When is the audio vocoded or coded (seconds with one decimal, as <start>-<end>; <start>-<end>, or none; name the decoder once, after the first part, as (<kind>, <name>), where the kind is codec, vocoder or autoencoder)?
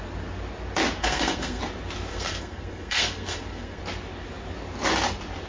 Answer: 1.0-1.6 (codec, SNAC); 2.1-3.8